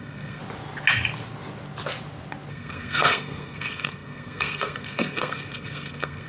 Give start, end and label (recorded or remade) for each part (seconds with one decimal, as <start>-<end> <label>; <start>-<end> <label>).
0.0-0.4 remade; 0.4-2.5 recorded; 2.5-6.3 remade